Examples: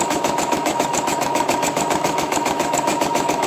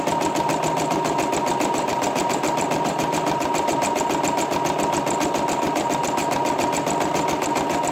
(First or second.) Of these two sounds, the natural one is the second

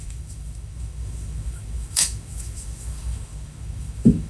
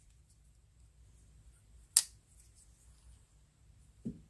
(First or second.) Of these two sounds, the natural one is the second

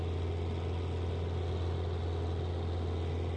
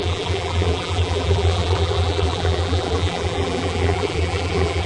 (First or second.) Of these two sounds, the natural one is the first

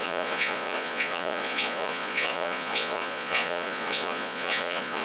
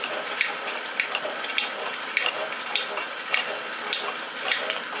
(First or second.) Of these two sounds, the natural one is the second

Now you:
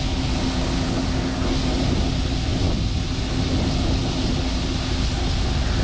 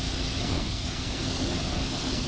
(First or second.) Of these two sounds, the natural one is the first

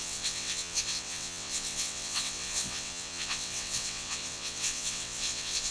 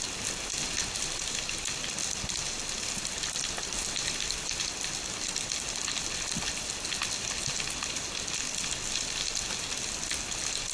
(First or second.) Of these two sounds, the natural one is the second